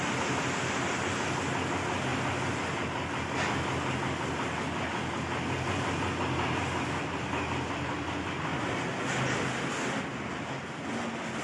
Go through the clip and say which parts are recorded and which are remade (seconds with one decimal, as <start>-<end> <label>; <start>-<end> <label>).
0.0-11.4 recorded

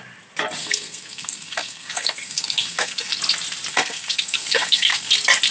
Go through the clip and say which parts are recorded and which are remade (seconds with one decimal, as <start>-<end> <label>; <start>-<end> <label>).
0.0-0.6 recorded; 0.6-3.2 remade; 3.2-3.7 recorded; 3.7-5.1 remade; 5.1-5.5 recorded

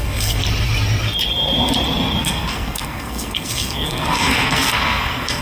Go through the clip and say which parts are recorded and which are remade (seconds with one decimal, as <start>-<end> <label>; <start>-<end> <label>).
0.0-0.4 remade; 0.4-2.2 recorded; 2.2-5.4 remade

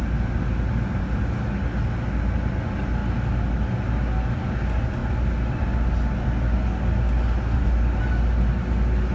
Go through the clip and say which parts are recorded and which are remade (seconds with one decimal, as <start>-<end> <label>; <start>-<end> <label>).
0.0-9.1 recorded

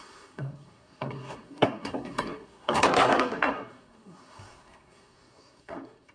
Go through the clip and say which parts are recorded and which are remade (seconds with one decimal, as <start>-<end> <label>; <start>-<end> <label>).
0.0-6.1 remade

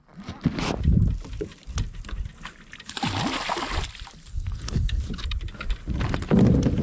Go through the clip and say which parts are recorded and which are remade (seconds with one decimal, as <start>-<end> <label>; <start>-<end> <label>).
0.0-4.3 recorded; 4.3-5.0 remade; 5.0-6.8 recorded

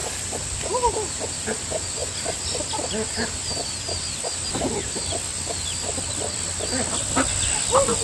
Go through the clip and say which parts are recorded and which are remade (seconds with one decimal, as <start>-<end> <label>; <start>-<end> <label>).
0.0-8.0 recorded